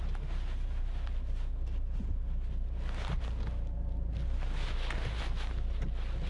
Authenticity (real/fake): real